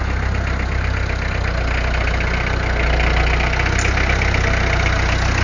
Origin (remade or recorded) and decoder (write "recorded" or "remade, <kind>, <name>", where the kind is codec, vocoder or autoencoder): recorded